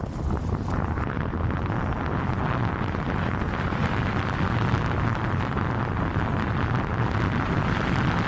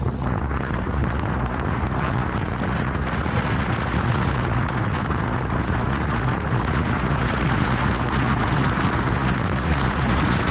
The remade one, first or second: second